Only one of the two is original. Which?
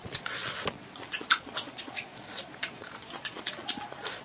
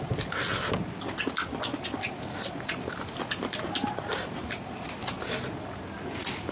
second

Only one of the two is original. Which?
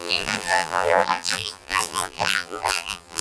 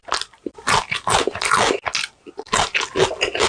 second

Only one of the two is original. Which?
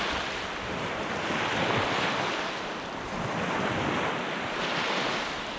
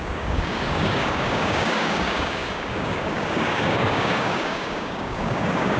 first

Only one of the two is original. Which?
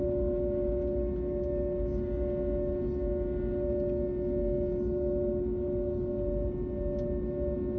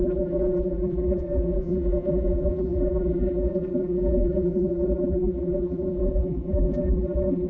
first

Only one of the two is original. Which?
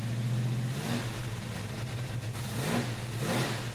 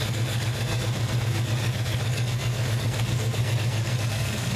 first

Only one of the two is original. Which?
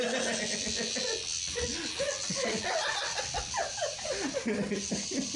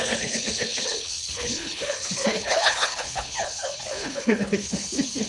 first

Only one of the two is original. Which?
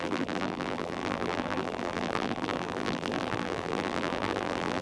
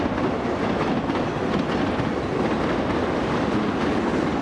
second